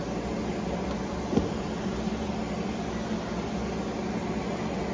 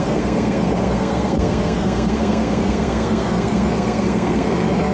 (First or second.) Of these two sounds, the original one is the first